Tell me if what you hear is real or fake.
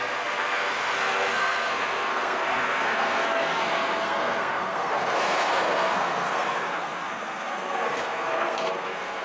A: fake